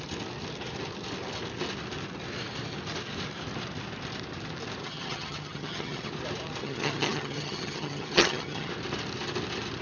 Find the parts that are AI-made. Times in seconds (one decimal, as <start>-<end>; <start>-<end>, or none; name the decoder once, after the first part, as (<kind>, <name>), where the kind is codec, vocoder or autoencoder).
4.8-6.1 (vocoder, HiFi-GAN); 6.6-8.7